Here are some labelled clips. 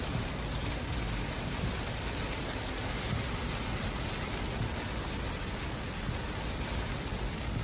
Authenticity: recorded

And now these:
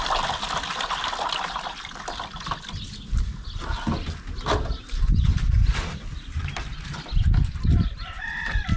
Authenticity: recorded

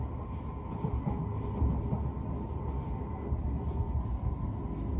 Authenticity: recorded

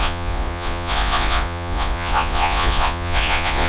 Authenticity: remade